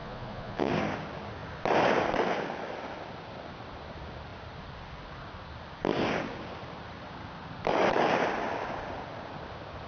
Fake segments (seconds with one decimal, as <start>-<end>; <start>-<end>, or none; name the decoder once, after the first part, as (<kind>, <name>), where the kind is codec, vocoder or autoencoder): 0.0-0.7 (vocoder, Vocos)

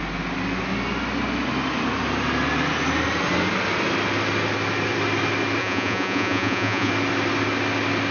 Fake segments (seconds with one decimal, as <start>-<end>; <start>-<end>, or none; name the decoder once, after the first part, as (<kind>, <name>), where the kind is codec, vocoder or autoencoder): 5.6-6.9 (vocoder, Vocos)

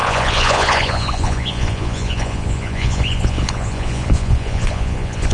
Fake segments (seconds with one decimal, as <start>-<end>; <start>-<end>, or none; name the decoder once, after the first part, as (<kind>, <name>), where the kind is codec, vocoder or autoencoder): 0.0-5.3 (vocoder, Vocos)

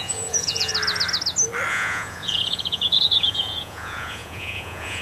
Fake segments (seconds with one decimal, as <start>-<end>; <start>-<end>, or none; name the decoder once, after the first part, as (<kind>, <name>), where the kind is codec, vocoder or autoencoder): 0.0-0.7 (vocoder, Vocos); 1.7-5.0